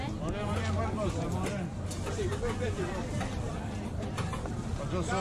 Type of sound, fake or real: real